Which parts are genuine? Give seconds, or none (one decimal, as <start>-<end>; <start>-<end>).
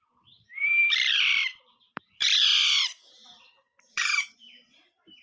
2.5-3.8